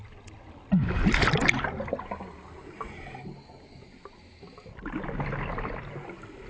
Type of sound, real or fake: real